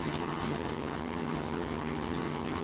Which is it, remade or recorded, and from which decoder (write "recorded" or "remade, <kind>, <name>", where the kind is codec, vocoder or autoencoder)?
remade, vocoder, HiFi-GAN